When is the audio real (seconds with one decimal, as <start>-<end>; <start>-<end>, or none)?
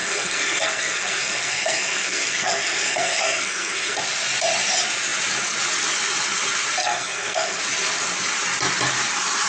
4.0-6.8; 7.6-9.5